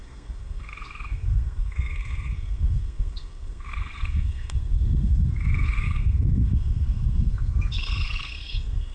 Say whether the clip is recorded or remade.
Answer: remade